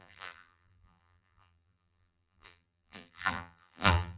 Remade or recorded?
remade